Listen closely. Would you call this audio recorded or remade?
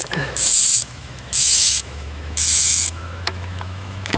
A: remade